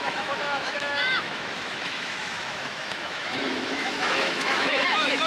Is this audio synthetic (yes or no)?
yes